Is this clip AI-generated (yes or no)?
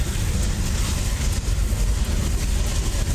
no